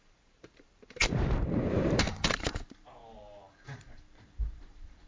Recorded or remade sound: remade